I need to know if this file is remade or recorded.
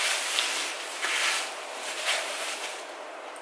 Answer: recorded